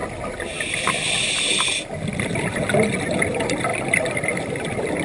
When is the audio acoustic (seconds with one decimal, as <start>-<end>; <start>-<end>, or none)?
0.0-5.0